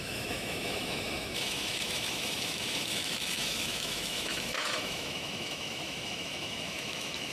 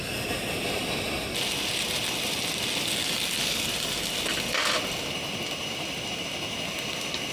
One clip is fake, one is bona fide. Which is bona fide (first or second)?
second